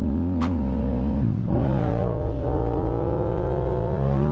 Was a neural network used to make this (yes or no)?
yes